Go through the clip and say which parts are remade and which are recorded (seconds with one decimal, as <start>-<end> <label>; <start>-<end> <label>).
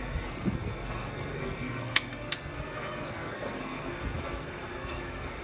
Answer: 0.0-5.4 remade